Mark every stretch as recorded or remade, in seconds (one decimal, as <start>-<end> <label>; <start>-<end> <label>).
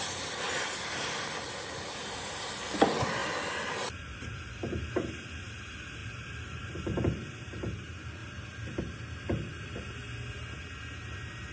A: 0.0-3.2 recorded; 3.2-5.6 remade; 5.6-6.0 recorded; 6.0-7.5 remade; 7.5-11.5 recorded